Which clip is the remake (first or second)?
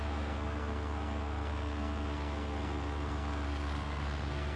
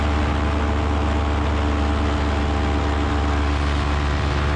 first